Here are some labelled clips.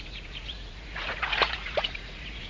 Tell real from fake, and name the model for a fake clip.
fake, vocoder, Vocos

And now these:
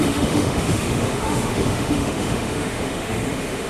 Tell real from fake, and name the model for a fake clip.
fake, autoencoder, DAC-VAE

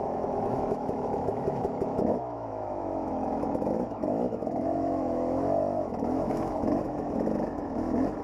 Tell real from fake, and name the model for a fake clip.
fake, autoencoder, DAC-VAE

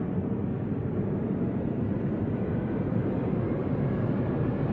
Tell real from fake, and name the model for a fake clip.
fake, vocoder, BigVGAN v2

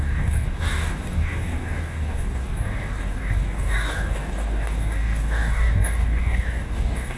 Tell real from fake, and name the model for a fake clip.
fake, codec, DAC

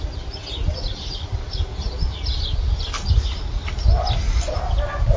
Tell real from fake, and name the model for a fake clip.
real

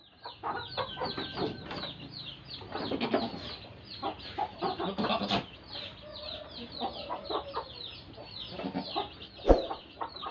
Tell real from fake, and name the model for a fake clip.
real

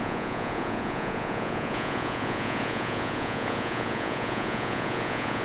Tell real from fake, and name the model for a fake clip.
fake, vocoder, Vocos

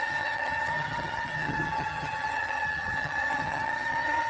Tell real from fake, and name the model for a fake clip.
fake, vocoder, HiFi-GAN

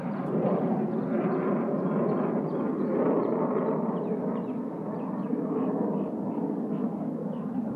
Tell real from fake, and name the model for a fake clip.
real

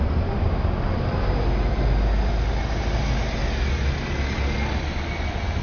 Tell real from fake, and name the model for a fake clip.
real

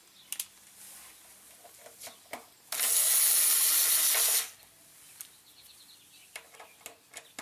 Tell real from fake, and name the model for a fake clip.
real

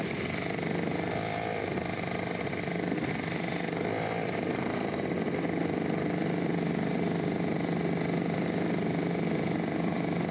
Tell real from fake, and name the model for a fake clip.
real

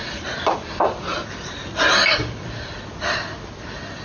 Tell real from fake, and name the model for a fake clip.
real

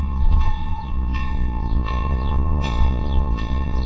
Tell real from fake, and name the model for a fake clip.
fake, vocoder, Vocos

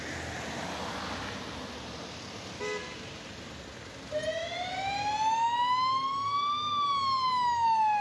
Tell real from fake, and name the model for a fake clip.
real